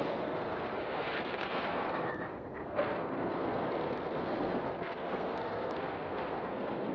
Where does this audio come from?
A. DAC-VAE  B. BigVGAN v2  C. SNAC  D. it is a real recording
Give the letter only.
C